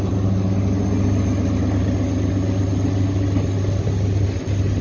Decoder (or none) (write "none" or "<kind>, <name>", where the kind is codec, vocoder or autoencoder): none